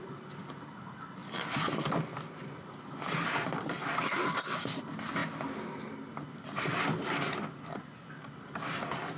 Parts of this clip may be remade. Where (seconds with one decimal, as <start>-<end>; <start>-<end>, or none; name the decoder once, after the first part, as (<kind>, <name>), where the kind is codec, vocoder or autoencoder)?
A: none

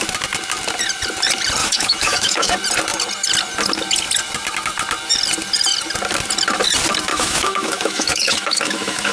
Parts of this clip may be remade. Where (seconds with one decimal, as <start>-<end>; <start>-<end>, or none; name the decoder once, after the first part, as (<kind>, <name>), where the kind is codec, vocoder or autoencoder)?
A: 1.6-2.5 (autoencoder, DAC-VAE); 7.1-9.1

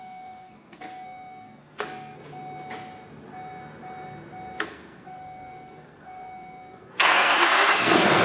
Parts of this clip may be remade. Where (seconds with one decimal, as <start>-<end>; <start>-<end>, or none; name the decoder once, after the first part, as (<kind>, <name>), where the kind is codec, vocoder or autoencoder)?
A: 0.0-2.2 (codec, SNAC); 4.6-8.2

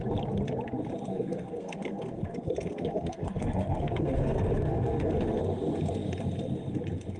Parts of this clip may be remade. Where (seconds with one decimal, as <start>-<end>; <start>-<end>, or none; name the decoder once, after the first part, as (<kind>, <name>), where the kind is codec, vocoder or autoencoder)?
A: 1.1-5.4 (codec, SNAC)